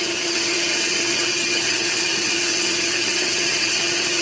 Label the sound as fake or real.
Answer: fake